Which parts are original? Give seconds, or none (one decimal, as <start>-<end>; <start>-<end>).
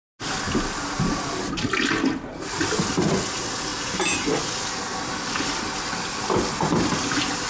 0.0-7.5